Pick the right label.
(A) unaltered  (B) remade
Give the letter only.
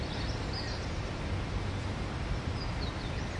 B